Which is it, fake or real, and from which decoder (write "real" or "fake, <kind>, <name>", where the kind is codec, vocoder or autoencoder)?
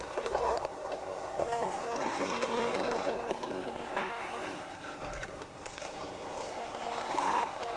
fake, codec, SNAC